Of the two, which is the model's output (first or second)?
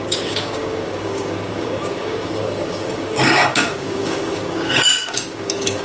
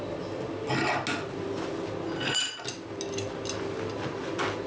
first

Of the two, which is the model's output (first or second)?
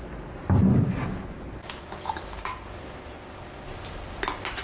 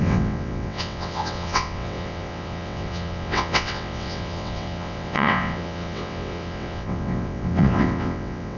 second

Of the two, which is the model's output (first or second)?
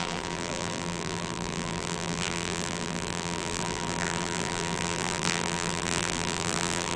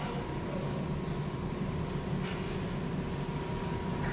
first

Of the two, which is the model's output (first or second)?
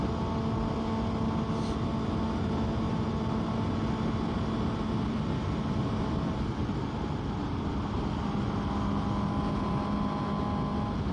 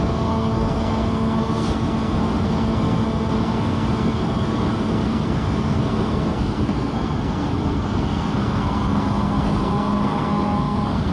second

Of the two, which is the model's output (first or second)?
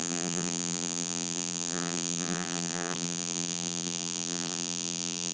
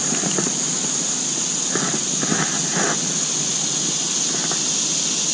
first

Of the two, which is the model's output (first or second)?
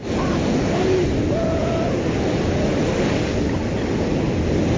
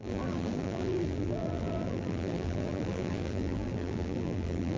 second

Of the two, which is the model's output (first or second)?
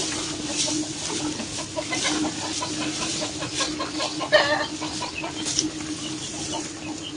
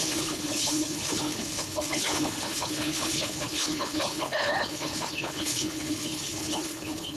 second